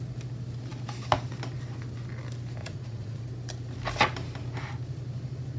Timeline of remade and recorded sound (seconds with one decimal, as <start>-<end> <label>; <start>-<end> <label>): 0.0-2.6 recorded; 2.6-3.2 remade; 3.2-5.6 recorded